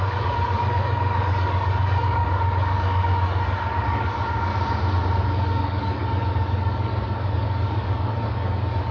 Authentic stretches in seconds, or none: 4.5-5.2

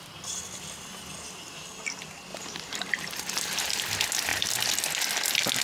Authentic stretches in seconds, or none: 0.0-2.3; 3.8-5.6

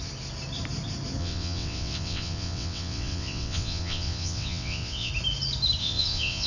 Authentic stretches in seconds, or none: 0.0-1.2; 5.1-5.8

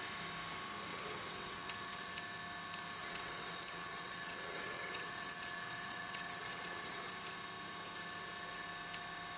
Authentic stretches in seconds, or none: 0.0-0.9; 2.1-3.0; 7.1-9.4

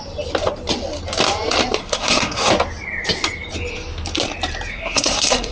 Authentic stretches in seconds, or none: 0.0-1.8; 2.5-4.7

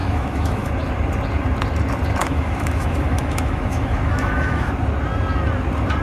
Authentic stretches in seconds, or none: 0.7-2.2; 4.7-6.0